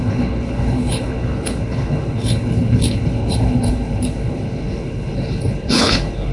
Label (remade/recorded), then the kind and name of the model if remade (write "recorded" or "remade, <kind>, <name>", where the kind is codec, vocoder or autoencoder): remade, codec, HILCodec